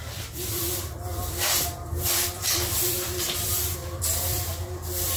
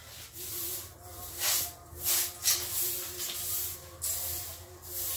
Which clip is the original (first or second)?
second